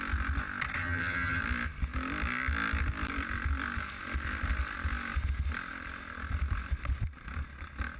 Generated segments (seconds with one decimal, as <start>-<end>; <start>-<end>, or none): 0.8-1.4